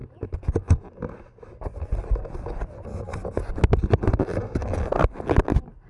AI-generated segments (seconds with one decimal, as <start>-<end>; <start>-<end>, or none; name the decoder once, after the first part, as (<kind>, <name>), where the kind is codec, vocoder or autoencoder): none